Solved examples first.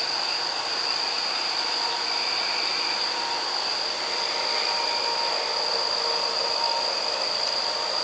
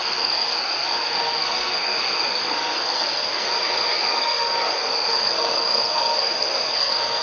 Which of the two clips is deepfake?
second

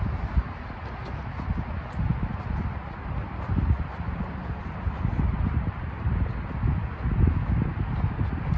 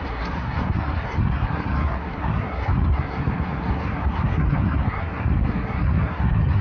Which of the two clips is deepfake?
second